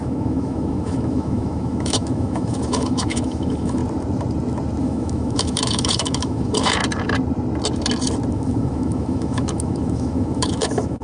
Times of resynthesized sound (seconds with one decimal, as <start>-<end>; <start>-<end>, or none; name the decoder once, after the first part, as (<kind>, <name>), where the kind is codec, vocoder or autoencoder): 0.0-3.8 (autoencoder, DAC-VAE); 4.8-6.8; 8.3-11.0